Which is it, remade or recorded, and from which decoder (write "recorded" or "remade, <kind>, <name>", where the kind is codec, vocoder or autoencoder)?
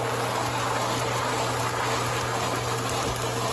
recorded